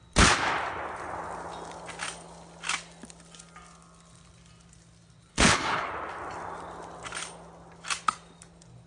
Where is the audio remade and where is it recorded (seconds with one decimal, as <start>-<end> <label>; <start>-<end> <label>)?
0.0-5.3 recorded; 5.3-5.9 remade; 5.9-8.9 recorded